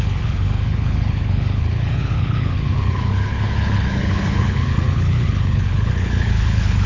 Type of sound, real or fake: fake